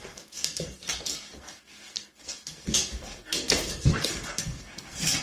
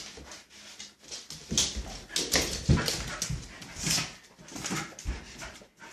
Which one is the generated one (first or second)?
first